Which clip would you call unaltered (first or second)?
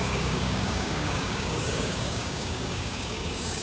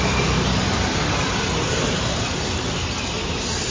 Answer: second